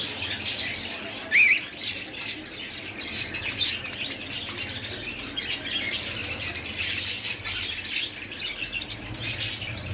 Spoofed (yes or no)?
no